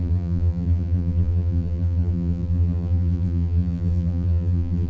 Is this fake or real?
fake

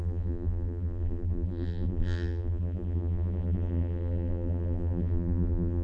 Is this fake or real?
fake